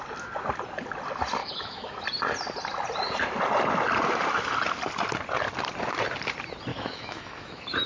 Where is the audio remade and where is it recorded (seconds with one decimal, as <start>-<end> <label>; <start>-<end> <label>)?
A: 0.0-1.4 recorded; 1.4-2.0 remade; 2.0-6.7 recorded; 6.7-7.9 remade